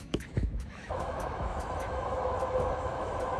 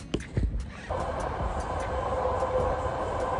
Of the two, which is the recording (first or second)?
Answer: second